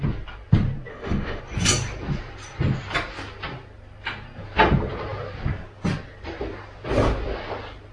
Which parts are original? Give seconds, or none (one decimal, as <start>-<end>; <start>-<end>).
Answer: 0.0-0.9; 1.4-7.9